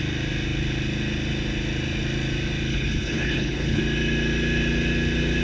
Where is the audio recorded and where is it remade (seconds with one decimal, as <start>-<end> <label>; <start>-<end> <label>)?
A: 0.0-2.7 recorded; 2.7-3.8 remade; 3.8-5.4 recorded